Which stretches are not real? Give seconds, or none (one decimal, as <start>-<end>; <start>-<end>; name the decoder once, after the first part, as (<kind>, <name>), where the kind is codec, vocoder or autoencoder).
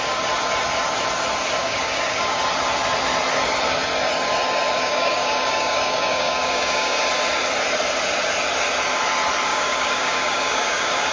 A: 1.6-2.4 (codec, DAC); 4.8-7.0; 9.5-11.1